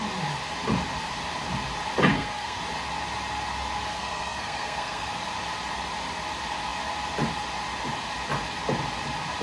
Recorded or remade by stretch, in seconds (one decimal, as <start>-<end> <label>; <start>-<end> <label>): 0.0-2.1 recorded; 2.1-2.6 remade; 2.6-3.9 recorded; 3.9-5.1 remade; 5.1-9.4 recorded